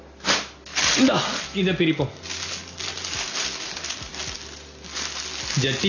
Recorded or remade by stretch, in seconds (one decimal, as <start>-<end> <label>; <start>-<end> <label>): 0.0-5.9 recorded

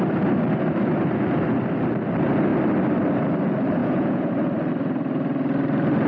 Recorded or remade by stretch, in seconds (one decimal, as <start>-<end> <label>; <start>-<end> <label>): 0.0-3.8 recorded; 3.8-4.3 remade; 4.3-6.1 recorded